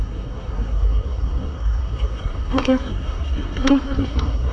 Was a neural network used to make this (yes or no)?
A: yes